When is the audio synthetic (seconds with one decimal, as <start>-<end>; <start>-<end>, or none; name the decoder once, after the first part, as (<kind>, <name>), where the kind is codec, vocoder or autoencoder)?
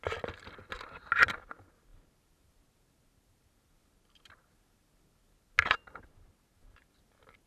none